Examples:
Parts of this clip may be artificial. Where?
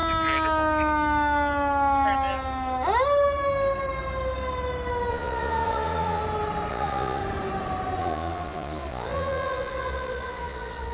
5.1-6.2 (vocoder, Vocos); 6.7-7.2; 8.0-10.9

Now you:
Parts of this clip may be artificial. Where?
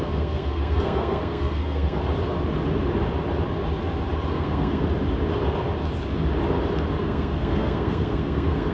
0.0-2.0 (codec, SNAC); 4.3-4.8; 7.0-8.7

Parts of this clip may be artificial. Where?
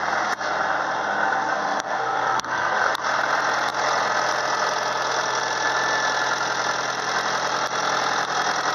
1.5-2.9 (codec, SNAC)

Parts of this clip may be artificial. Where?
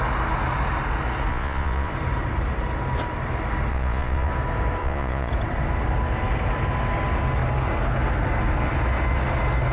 1.3-1.9 (vocoder, Vocos); 3.7-4.3; 4.8-5.3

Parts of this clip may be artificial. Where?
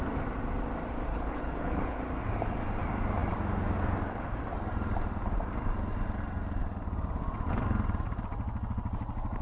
1.1-2.0 (codec, HILCodec)